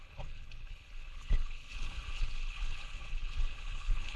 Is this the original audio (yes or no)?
no